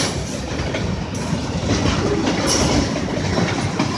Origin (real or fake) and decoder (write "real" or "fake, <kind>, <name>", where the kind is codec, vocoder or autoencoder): real